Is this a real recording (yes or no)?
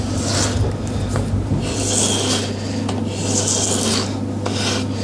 yes